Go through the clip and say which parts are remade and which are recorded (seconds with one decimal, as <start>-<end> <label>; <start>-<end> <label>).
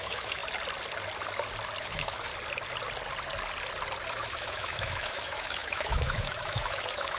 0.0-0.4 remade; 0.4-1.8 recorded; 1.8-2.3 remade; 2.3-4.1 recorded; 4.1-7.2 remade